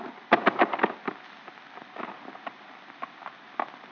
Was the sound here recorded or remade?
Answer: recorded